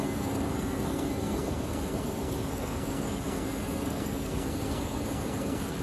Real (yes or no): no